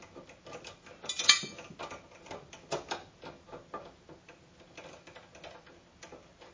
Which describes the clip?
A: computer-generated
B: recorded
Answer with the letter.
B